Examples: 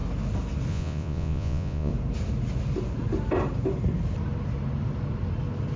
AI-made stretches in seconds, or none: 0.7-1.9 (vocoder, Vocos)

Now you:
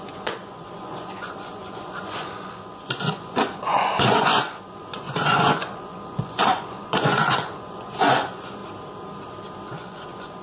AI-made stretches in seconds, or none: 0.0-8.6 (vocoder, Vocos); 9.7-10.4

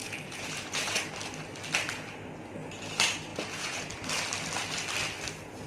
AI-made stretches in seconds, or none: 0.0-1.0 (vocoder, Vocos); 3.3-3.9

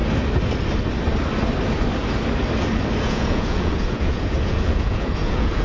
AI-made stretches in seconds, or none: 3.0-5.6 (vocoder, Vocos)

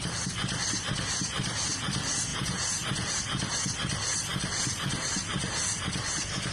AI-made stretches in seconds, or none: 2.3-3.2 (vocoder, Vocos)

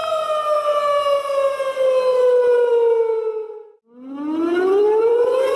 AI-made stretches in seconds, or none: 4.5-5.6 (vocoder, Vocos)